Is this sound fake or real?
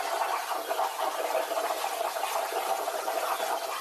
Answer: real